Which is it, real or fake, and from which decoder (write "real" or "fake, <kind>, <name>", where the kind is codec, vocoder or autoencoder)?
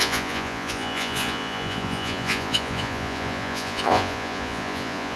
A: fake, vocoder, Vocos